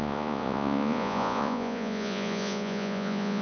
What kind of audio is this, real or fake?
fake